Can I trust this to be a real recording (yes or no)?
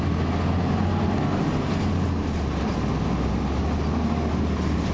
yes